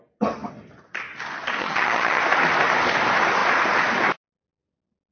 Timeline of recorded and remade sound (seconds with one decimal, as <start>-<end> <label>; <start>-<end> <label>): 0.0-1.6 recorded; 1.6-2.2 remade; 2.2-5.1 recorded